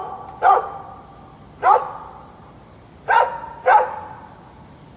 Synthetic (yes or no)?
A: no